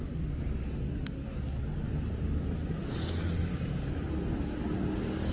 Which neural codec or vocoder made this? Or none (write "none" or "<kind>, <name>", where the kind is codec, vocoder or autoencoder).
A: none